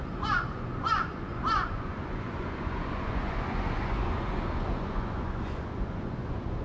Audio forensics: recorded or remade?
remade